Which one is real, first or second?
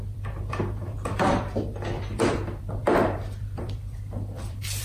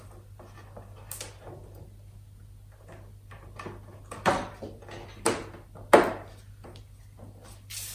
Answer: second